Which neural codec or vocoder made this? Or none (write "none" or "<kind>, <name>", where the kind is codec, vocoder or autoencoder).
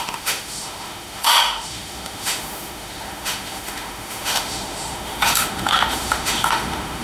autoencoder, DAC-VAE